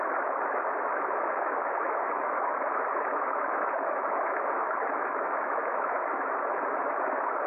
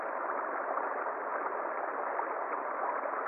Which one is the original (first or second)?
second